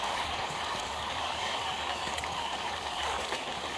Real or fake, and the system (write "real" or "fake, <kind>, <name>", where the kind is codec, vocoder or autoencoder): fake, codec, DAC